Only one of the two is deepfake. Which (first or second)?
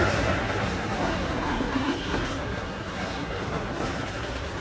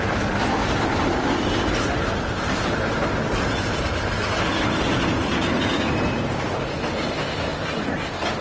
first